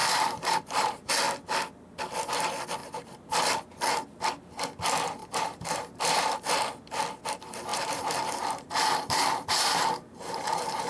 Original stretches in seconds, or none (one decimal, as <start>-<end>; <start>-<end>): 1.1-2.8; 3.3-5.2; 6.7-7.7